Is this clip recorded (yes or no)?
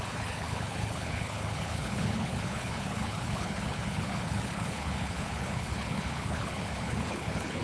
no